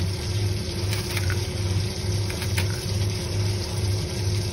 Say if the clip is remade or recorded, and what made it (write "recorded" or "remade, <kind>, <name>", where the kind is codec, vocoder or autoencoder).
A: remade, vocoder, BigVGAN v2